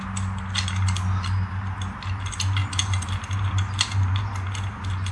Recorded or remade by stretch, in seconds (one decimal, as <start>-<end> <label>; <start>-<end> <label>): 0.0-5.1 recorded